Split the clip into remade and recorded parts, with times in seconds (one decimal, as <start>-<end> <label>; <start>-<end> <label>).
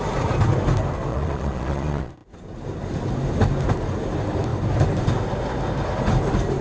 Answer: 0.0-1.1 recorded; 1.1-2.1 remade; 2.1-6.6 recorded